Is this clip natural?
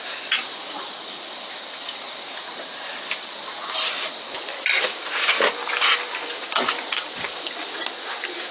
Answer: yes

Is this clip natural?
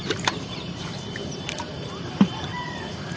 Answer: no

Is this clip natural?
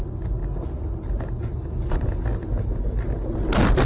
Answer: yes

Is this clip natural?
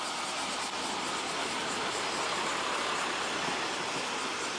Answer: yes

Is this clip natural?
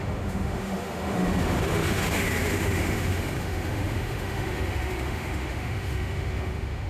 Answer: no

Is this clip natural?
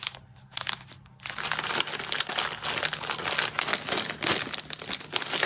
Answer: yes